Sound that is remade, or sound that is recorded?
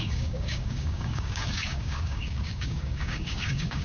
remade